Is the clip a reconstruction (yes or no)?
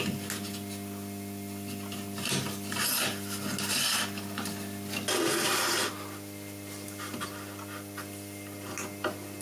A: no